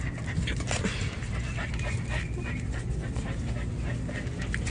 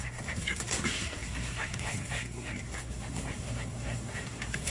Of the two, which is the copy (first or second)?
second